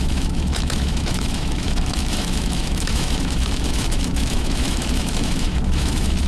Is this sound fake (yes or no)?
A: yes